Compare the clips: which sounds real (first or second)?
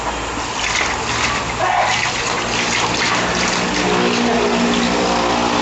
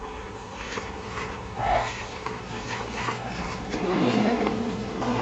first